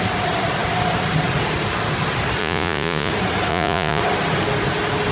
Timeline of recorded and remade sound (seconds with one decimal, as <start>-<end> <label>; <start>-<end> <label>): 0.0-2.4 recorded; 2.4-3.1 remade; 3.1-3.5 recorded; 3.5-4.0 remade; 4.0-5.1 recorded